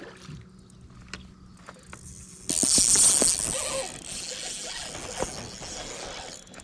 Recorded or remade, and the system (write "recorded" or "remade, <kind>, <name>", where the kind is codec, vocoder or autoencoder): recorded